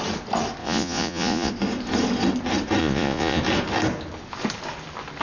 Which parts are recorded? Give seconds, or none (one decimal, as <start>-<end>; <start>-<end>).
0.0-0.6; 1.5-2.8; 3.4-5.2